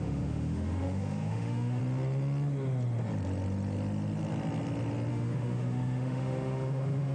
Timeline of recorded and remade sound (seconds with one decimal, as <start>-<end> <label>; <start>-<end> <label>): 0.0-1.8 remade; 1.8-5.1 recorded; 5.1-7.1 remade